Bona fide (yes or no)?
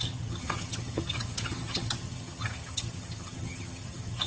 no